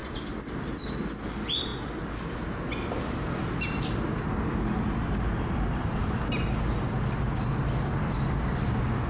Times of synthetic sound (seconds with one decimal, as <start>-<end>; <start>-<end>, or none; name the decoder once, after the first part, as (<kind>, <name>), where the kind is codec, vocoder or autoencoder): none